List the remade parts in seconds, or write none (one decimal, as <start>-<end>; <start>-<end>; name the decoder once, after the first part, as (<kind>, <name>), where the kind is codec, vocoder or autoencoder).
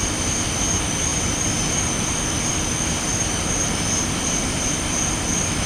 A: 1.1-1.6 (vocoder, BigVGAN v2); 3.1-4.9